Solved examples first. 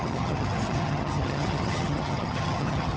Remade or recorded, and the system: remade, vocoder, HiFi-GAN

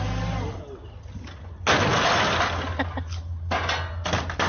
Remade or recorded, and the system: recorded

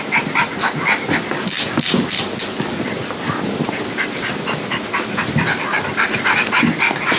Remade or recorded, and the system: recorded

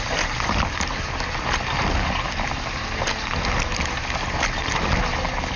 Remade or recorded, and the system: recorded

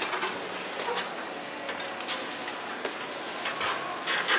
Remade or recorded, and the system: recorded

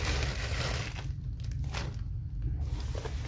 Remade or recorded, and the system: recorded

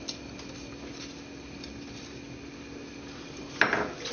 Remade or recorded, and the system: recorded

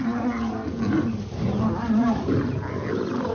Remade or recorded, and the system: recorded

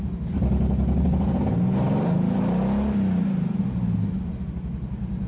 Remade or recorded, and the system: recorded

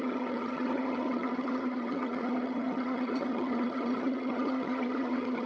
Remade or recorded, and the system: remade, vocoder, HiFi-GAN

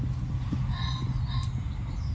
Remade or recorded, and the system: recorded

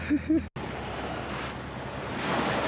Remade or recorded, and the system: recorded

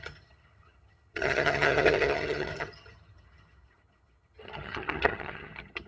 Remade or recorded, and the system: remade, vocoder, HiFi-GAN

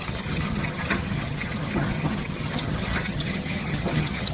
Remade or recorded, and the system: remade, vocoder, HiFi-GAN